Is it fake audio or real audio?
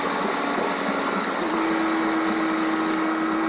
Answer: real